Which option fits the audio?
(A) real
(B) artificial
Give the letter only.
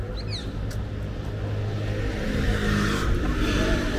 A